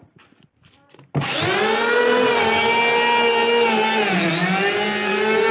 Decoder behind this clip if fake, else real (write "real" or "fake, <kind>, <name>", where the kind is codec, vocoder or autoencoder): real